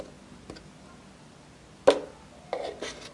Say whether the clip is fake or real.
real